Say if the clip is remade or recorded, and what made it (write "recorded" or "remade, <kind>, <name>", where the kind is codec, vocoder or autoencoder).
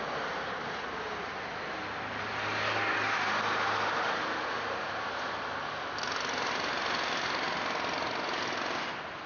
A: recorded